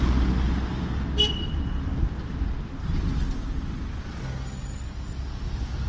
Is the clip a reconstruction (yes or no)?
no